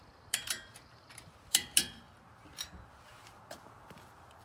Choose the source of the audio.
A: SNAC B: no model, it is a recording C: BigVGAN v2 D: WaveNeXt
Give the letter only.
C